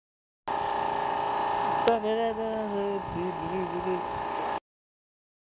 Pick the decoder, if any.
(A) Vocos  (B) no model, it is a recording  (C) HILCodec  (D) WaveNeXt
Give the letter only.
B